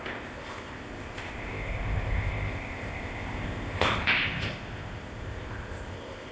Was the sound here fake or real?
fake